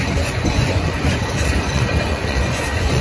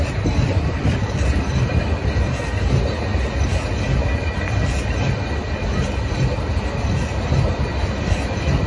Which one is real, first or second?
second